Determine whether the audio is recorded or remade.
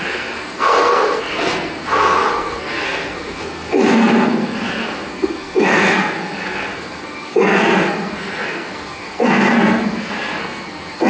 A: remade